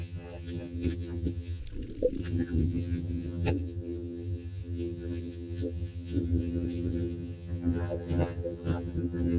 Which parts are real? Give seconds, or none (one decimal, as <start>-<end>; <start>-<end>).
1.6-2.2